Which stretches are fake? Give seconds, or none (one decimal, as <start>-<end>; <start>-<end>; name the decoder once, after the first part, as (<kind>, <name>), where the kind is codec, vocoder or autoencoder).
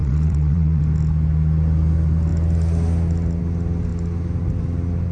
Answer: 0.0-0.8 (vocoder, WaveNeXt)